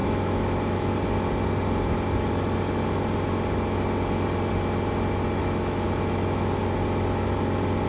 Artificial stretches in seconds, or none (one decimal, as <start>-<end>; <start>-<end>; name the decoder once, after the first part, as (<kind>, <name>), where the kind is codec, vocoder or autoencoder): 0.0-0.9 (autoencoder, DAC-VAE); 5.4-6.6